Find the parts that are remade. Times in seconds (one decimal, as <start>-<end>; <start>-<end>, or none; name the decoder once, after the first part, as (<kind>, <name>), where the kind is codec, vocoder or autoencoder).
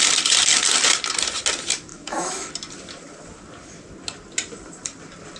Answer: 1.9-2.5 (autoencoder, DAC-VAE)